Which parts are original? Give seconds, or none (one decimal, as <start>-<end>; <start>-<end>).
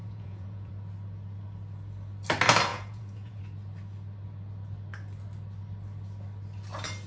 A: 0.7-2.7; 3.4-7.1